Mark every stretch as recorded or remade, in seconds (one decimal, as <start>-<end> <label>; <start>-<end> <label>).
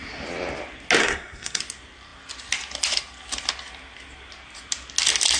0.0-1.0 recorded; 1.0-1.6 remade; 1.6-5.4 recorded